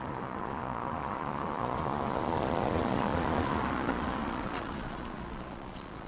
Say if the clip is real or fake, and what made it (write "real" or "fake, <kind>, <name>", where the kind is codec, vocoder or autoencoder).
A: fake, vocoder, Vocos